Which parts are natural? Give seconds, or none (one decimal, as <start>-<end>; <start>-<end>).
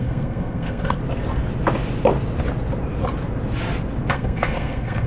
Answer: 1.0-4.1